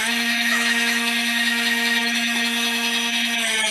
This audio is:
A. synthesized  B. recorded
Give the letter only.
A